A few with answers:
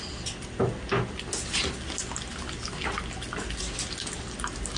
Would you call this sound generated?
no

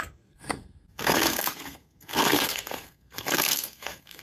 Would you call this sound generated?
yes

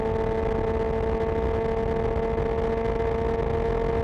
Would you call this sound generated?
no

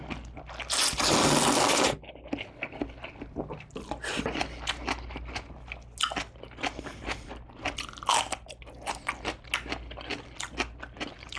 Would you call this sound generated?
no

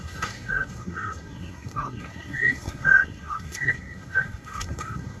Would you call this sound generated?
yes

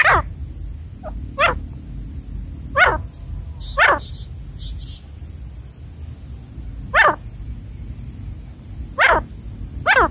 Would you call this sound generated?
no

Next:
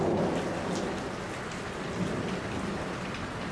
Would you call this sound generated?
no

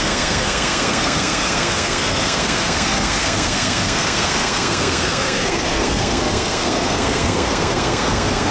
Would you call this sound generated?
yes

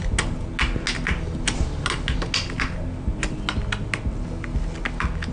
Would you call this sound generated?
no